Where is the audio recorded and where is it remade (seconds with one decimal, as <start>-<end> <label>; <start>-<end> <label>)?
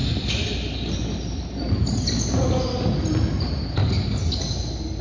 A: 0.0-0.5 remade; 0.5-5.0 recorded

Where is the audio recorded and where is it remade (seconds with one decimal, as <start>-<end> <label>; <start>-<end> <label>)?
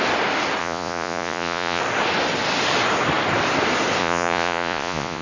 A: 0.0-0.6 recorded; 0.6-1.8 remade; 1.8-4.0 recorded; 4.0-5.2 remade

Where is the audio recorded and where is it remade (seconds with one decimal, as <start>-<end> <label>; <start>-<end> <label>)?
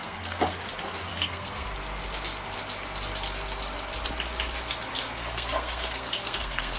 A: 0.0-0.6 remade; 0.6-1.1 recorded; 1.1-1.7 remade; 1.7-4.9 recorded; 4.9-6.8 remade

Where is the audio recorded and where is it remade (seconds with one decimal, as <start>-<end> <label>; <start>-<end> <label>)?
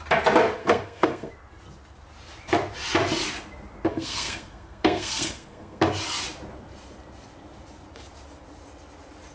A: 0.0-0.6 recorded; 0.6-1.3 remade; 1.3-3.9 recorded; 3.9-5.8 remade; 5.8-9.3 recorded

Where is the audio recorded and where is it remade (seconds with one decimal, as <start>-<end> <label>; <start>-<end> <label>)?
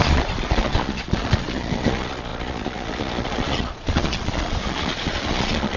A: 0.0-5.8 remade